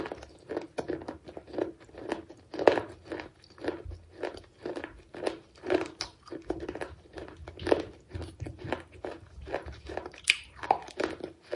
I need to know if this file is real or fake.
real